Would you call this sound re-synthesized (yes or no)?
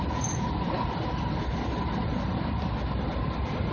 no